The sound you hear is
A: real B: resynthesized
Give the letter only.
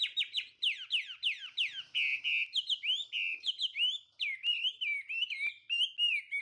A